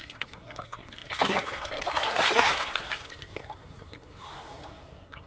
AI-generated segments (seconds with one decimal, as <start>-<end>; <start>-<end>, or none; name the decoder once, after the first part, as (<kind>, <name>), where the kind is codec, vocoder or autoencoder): 0.0-5.3 (codec, SNAC)